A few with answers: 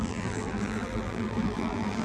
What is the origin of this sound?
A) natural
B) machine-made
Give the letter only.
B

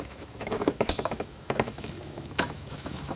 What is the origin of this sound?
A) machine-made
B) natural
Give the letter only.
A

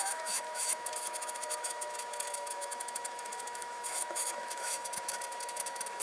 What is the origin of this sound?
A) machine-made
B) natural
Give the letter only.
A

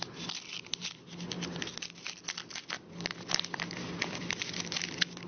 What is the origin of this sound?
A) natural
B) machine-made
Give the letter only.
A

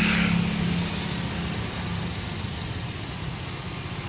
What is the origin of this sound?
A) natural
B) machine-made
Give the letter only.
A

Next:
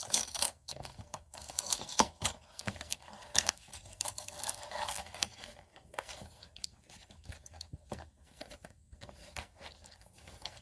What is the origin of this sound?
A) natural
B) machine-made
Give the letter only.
B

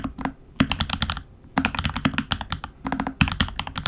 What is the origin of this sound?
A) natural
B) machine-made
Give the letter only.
A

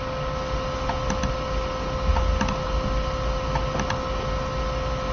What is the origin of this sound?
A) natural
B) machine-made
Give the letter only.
A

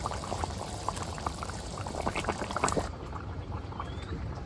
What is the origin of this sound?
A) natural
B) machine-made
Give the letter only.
B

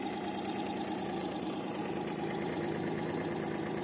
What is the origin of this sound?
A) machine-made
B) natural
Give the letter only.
B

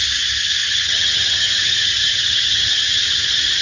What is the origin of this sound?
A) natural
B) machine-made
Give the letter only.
B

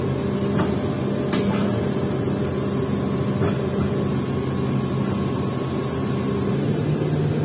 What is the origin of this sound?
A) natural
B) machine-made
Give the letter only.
A